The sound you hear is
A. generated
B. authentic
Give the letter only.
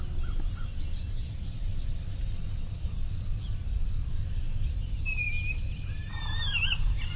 B